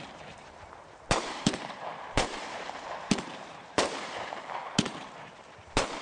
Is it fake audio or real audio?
fake